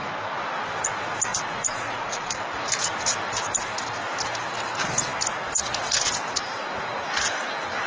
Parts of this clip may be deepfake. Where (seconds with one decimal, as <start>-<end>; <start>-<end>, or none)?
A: 1.3-2.3